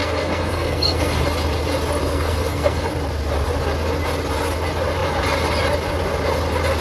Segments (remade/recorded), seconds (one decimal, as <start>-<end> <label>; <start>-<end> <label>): 0.0-1.2 remade; 1.2-2.0 recorded; 2.0-2.9 remade; 2.9-6.8 recorded